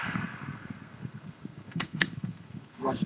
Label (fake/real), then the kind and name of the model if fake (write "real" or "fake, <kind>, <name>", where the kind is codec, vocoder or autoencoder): fake, codec, SNAC